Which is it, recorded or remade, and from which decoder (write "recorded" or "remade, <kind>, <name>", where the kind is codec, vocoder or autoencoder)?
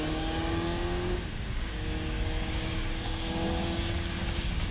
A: remade, codec, DAC